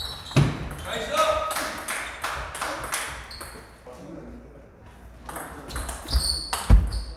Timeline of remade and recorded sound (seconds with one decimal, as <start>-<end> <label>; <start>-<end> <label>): 0.0-7.2 recorded